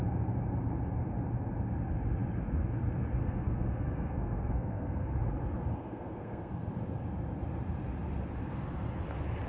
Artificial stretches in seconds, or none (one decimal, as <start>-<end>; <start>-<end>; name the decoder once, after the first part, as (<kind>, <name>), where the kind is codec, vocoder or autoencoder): 3.2-5.1 (codec, SNAC); 5.7-6.7